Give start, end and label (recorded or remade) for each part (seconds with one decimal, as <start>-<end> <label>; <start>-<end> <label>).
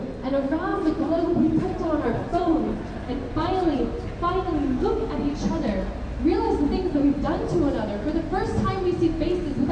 0.0-0.7 recorded; 0.7-1.6 remade; 1.6-2.3 recorded; 2.3-3.9 remade; 3.9-9.7 recorded